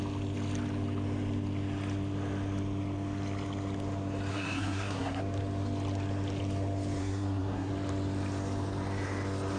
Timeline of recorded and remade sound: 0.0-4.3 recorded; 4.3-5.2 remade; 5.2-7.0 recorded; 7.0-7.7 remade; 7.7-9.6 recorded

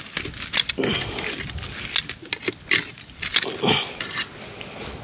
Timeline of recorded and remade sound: 0.0-5.0 recorded

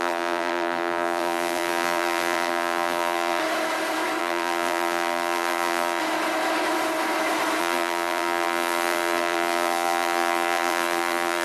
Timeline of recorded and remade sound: 0.0-3.4 remade; 3.4-4.2 recorded; 4.2-6.0 remade; 6.0-7.6 recorded; 7.6-11.4 remade

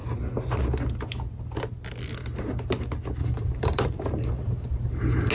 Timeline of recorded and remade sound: 0.0-3.2 recorded; 3.2-5.3 remade

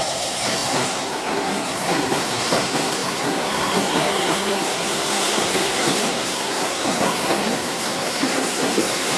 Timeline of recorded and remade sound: 0.0-9.2 remade

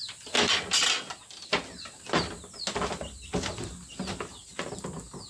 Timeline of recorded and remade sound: 0.0-5.3 recorded